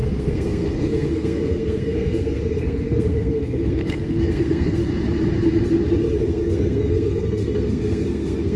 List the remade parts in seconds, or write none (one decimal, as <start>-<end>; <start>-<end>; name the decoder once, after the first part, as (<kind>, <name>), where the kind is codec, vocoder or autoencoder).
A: 0.0-4.8 (codec, SNAC); 6.2-8.6

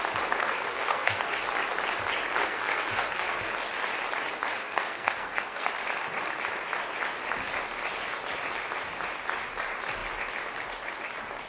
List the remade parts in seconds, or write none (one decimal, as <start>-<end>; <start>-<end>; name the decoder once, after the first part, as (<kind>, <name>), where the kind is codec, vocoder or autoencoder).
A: 0.4-1.4 (codec, SNAC); 2.4-3.5; 4.6-5.7

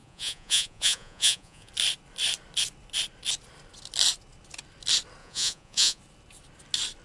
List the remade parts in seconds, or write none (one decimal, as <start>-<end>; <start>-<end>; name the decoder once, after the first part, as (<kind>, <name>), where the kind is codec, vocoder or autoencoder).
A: 0.0-1.7 (vocoder, Vocos); 5.2-6.0

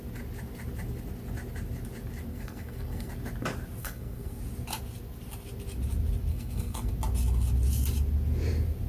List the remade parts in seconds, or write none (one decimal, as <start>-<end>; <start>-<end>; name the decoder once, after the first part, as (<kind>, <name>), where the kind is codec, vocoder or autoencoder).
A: 2.3-3.1 (codec, SNAC); 3.8-4.4; 6.3-6.9

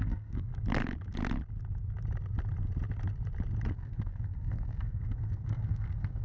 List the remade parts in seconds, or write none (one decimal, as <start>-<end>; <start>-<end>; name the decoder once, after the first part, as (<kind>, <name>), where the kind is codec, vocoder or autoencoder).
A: 0.0-0.5 (codec, SNAC); 3.7-6.2

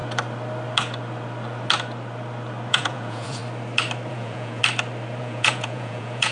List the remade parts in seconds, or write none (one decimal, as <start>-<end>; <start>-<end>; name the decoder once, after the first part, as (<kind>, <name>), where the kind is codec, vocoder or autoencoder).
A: 2.7-3.4 (vocoder, Vocos); 4.1-4.6; 5.2-6.3

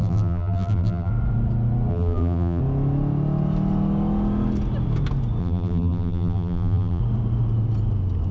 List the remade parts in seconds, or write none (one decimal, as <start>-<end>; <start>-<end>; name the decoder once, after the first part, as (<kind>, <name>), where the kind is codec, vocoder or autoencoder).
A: 0.0-1.1 (vocoder, BigVGAN v2); 1.9-2.6; 5.4-7.0

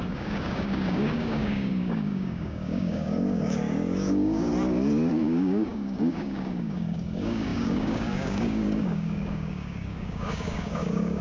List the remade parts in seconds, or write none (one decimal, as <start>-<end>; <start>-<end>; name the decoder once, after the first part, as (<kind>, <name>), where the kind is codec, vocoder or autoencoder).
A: 0.0-4.5 (codec, DAC); 5.1-11.2